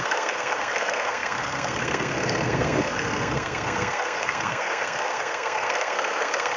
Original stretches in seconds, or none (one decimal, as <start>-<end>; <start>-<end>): none